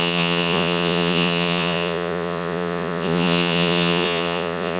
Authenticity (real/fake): fake